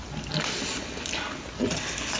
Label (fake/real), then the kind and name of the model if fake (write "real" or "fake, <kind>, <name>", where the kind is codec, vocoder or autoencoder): real